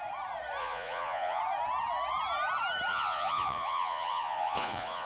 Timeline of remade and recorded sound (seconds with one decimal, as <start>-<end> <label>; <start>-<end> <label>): 0.0-0.6 recorded; 0.6-1.4 remade; 1.4-2.9 recorded; 2.9-5.1 remade